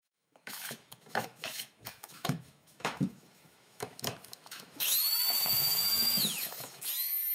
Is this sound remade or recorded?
remade